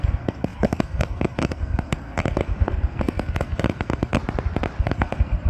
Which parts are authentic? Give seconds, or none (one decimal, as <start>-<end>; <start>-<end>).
4.2-4.8